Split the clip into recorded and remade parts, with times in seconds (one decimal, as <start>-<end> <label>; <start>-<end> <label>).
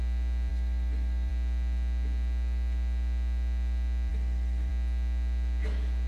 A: 0.0-0.5 recorded; 0.5-1.3 remade; 1.3-4.1 recorded; 4.1-4.7 remade; 4.7-6.1 recorded